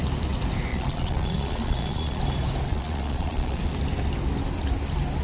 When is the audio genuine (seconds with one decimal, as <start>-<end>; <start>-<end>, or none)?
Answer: 0.0-0.7; 2.2-2.7; 3.6-5.2